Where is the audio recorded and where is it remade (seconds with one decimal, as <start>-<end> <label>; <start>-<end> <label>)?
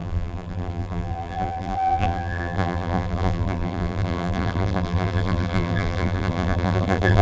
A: 0.0-7.2 remade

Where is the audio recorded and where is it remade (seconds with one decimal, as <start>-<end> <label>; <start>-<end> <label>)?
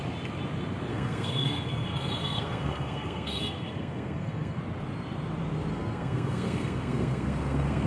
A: 0.0-0.9 recorded; 0.9-4.6 remade; 4.6-5.7 recorded; 5.7-7.9 remade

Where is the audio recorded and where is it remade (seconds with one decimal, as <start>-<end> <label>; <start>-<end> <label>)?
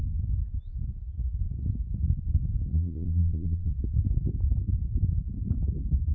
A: 0.0-2.7 recorded; 2.7-3.7 remade; 3.7-6.1 recorded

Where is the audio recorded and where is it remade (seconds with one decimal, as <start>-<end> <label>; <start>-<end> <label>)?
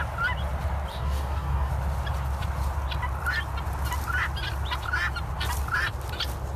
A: 0.0-0.9 recorded; 0.9-1.7 remade; 1.7-6.6 recorded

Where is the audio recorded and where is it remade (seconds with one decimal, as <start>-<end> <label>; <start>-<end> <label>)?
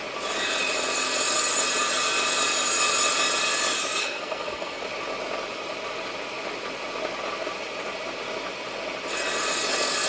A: 0.0-4.0 recorded; 4.0-4.8 remade; 4.8-10.1 recorded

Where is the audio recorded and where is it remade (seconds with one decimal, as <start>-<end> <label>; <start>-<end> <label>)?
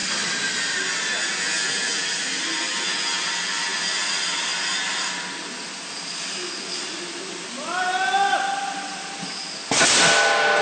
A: 0.0-10.6 recorded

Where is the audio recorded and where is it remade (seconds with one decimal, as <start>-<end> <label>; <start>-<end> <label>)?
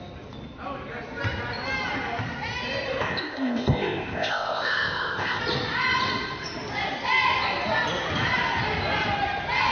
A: 0.0-3.0 recorded; 3.0-5.4 remade; 5.4-9.7 recorded